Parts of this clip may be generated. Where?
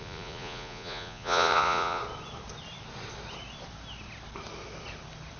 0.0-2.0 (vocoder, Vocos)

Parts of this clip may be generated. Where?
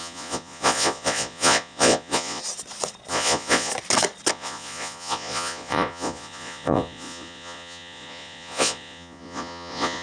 0.0-2.4 (vocoder, Vocos); 3.1-3.7; 4.3-10.0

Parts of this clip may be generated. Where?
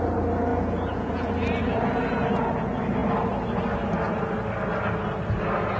0.5-1.3 (vocoder, Vocos)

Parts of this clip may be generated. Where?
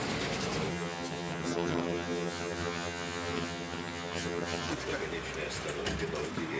0.7-4.7 (vocoder, HiFi-GAN)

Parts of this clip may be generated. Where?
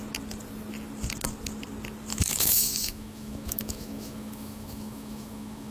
2.1-5.7 (autoencoder, DAC-VAE)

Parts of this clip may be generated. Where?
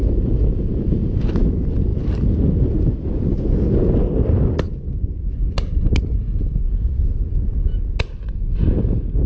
0.0-1.3 (vocoder, Vocos)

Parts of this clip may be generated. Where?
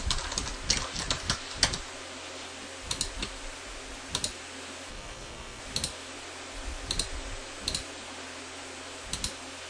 4.9-5.6 (codec, SNAC)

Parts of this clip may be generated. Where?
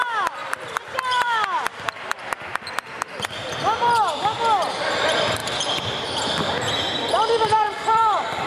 0.4-2.3 (vocoder, BigVGAN v2); 5.4-8.5